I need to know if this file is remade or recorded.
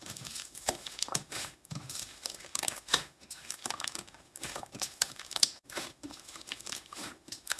remade